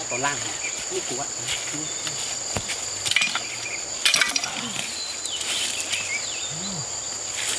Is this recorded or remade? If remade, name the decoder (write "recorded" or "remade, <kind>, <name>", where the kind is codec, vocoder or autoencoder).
recorded